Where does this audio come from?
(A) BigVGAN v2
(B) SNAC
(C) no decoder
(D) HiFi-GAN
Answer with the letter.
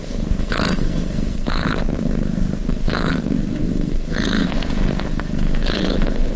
B